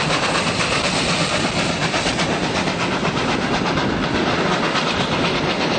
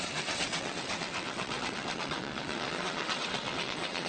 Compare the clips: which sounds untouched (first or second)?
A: first